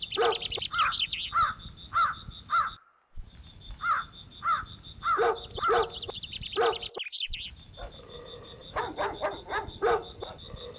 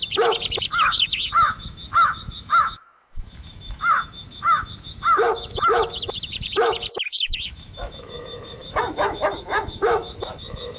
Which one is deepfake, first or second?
second